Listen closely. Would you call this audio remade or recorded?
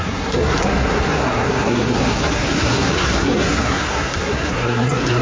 remade